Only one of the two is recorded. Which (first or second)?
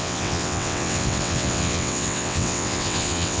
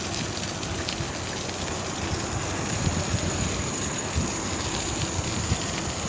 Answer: second